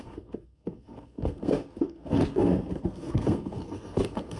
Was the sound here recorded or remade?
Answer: remade